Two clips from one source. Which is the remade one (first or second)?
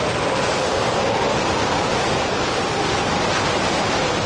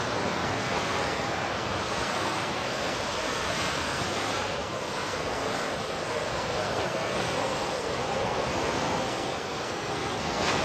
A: second